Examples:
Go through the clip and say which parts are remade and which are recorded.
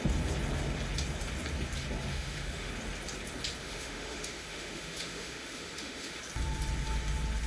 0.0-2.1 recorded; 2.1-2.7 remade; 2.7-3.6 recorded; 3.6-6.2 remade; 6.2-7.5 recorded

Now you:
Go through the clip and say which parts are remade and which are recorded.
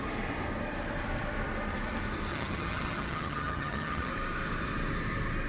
0.0-2.3 recorded; 2.3-4.1 remade; 4.1-5.5 recorded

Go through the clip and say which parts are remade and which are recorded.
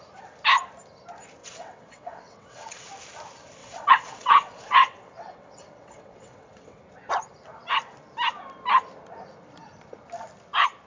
0.0-1.4 recorded; 1.4-2.9 remade; 2.9-3.6 recorded; 3.6-6.8 remade; 6.8-10.9 recorded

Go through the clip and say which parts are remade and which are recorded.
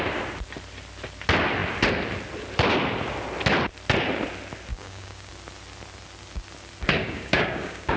0.0-4.7 recorded; 4.7-5.3 remade; 5.3-7.0 recorded; 7.0-8.0 remade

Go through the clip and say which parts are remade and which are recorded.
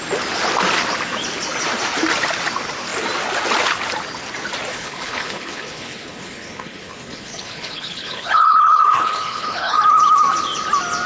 0.0-4.7 recorded; 4.7-9.8 remade; 9.8-11.1 recorded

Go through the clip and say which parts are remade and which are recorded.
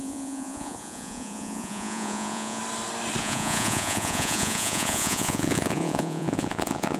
0.0-2.6 remade; 2.6-3.2 recorded; 3.2-7.0 remade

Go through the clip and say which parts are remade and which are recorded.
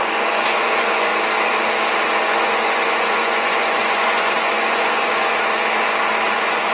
0.0-1.1 remade; 1.1-1.9 recorded; 1.9-5.6 remade; 5.6-6.3 recorded; 6.3-6.7 remade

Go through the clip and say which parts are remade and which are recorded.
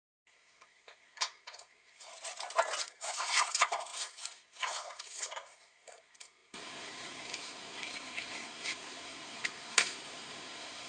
0.0-2.1 remade; 2.1-2.8 recorded; 2.8-10.9 remade